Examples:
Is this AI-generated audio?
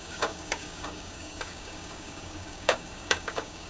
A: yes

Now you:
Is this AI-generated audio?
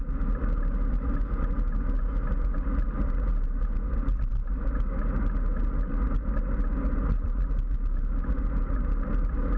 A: no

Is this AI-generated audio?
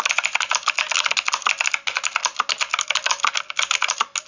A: no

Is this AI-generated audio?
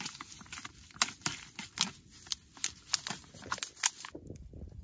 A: no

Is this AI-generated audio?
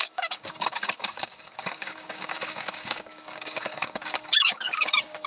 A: yes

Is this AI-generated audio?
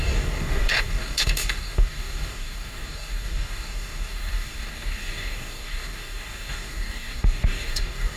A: yes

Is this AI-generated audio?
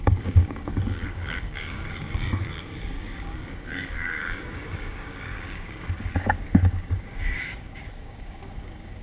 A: yes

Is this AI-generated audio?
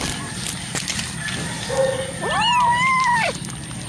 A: no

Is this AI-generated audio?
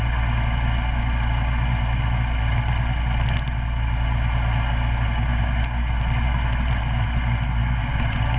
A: no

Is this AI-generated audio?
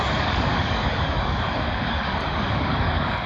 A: yes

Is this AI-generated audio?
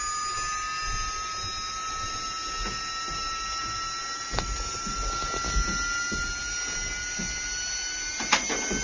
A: no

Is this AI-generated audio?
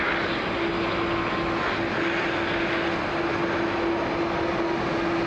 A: no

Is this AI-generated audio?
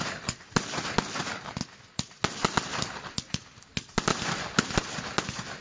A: no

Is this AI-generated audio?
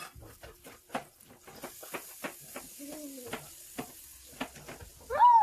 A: no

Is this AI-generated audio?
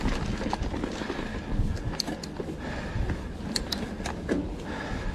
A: no